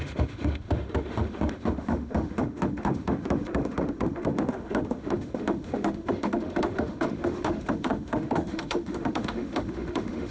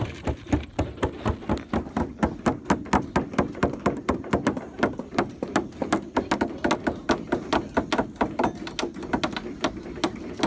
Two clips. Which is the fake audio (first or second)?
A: first